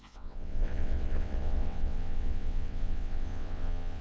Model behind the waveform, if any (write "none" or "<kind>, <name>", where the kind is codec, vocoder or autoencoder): vocoder, WaveNeXt